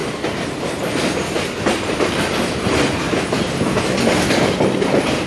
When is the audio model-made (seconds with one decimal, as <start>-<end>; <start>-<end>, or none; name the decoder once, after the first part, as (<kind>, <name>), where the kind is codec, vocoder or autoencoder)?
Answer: 0.0-0.6 (vocoder, BigVGAN v2)

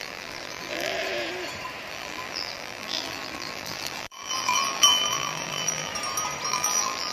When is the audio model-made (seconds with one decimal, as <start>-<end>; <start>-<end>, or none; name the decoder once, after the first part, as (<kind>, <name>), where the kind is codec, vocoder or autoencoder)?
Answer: 0.0-0.9 (vocoder, BigVGAN v2); 1.9-5.9; 6.5-7.1

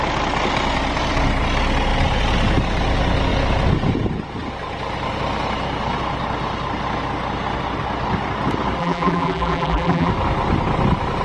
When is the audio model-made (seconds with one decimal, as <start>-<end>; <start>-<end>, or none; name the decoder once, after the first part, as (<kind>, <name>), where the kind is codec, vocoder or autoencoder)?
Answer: 8.8-10.1 (vocoder, BigVGAN v2)

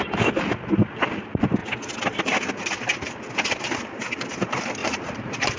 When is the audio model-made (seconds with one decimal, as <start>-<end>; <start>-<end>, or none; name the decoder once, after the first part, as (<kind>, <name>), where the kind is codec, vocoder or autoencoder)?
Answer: 4.8-5.6 (vocoder, BigVGAN v2)

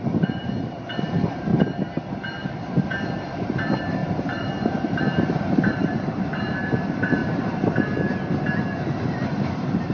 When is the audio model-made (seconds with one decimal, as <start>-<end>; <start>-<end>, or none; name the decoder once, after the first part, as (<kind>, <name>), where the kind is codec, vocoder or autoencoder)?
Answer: 0.0-1.5 (vocoder, BigVGAN v2); 2.1-7.2; 8.9-9.9

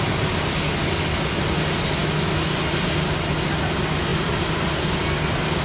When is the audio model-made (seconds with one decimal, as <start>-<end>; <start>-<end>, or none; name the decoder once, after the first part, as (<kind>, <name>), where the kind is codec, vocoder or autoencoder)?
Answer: 4.1-4.6 (vocoder, BigVGAN v2)

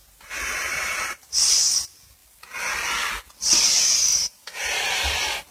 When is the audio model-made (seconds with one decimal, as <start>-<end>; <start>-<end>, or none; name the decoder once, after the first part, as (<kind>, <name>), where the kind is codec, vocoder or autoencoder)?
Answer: 0.0-1.6 (vocoder, BigVGAN v2); 4.1-5.5

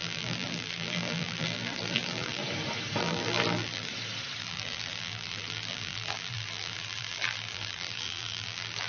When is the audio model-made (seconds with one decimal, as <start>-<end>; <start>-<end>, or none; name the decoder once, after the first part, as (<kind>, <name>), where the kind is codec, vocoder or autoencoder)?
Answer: 0.0-2.4 (vocoder, BigVGAN v2); 3.0-3.9; 4.4-8.9